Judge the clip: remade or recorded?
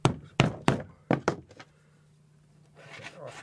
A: recorded